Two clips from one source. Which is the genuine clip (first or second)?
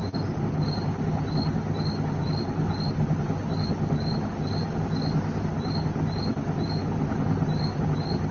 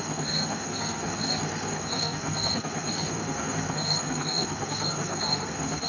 first